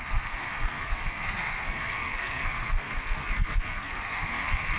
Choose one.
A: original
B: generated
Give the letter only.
B